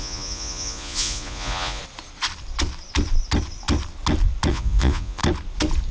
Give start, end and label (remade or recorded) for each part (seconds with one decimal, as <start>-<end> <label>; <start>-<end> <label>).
0.0-1.8 remade; 1.8-4.5 recorded; 4.5-5.2 remade; 5.2-5.9 recorded